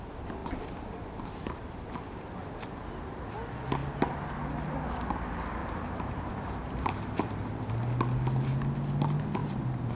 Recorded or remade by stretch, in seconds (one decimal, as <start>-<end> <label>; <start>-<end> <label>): 0.0-0.4 recorded; 0.4-1.9 remade; 1.9-5.6 recorded; 5.6-7.7 remade; 7.7-9.4 recorded; 9.4-10.0 remade

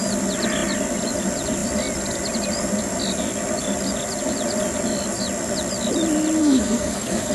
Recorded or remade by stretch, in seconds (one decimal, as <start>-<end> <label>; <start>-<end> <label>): 0.0-6.4 recorded; 6.4-7.3 remade

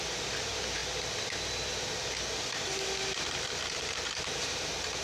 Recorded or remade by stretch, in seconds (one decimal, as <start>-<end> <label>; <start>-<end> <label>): 0.0-0.8 remade; 0.8-3.8 recorded; 3.8-5.0 remade

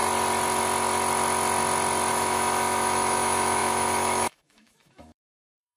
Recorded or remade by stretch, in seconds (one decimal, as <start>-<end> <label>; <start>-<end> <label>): 0.0-2.1 recorded; 2.1-5.8 remade

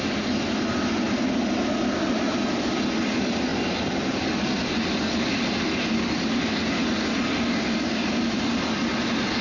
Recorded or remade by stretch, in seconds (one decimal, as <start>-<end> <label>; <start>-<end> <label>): 0.0-9.4 recorded